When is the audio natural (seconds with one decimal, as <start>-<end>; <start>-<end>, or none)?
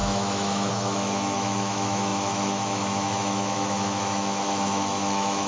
none